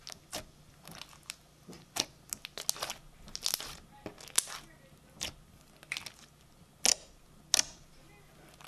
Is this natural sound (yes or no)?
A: yes